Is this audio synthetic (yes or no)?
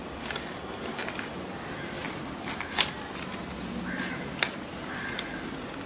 no